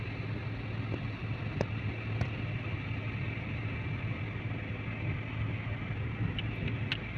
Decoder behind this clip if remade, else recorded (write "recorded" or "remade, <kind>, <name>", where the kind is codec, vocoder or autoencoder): recorded